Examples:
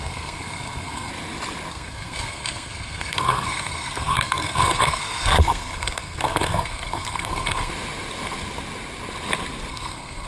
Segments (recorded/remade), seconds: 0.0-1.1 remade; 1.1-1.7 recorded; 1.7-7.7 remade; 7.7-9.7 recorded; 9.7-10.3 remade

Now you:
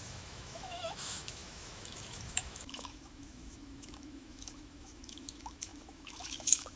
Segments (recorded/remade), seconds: 0.0-6.8 remade